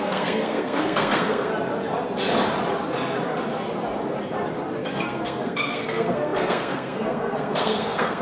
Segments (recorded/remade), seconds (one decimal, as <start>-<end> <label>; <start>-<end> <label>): 0.0-1.5 remade; 1.5-4.8 recorded; 4.8-8.2 remade